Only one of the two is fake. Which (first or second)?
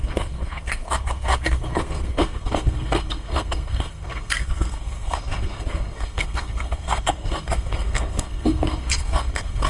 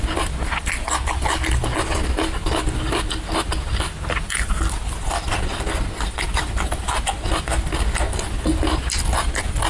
first